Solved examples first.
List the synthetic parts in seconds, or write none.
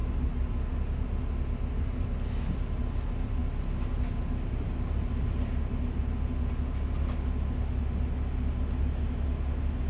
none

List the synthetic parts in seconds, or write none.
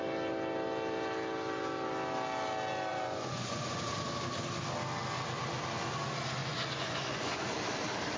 2.9-3.8 (vocoder, Vocos); 6.4-7.6